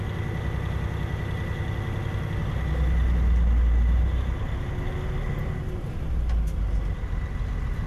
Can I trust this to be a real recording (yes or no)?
yes